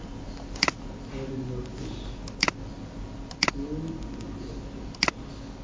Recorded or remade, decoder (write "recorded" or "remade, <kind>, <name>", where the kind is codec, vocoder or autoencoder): recorded